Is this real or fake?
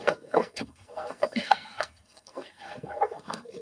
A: fake